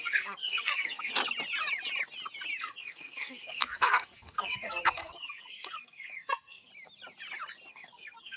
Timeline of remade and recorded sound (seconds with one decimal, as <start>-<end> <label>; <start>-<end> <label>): 0.0-1.1 remade; 1.1-2.6 recorded; 2.6-6.7 remade; 6.7-7.7 recorded; 7.7-8.4 remade